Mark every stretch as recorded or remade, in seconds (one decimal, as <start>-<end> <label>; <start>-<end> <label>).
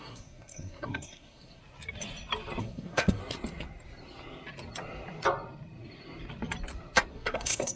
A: 0.0-1.6 remade; 1.6-2.6 recorded; 2.6-3.2 remade; 3.2-7.1 recorded; 7.1-7.8 remade